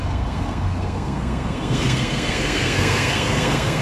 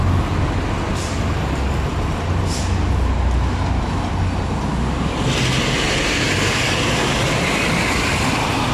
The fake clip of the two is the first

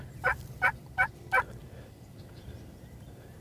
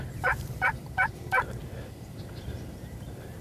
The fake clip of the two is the second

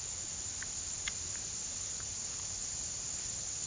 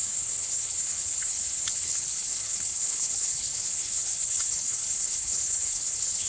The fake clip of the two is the second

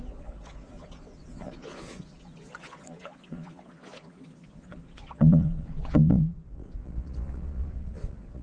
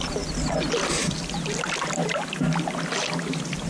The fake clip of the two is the first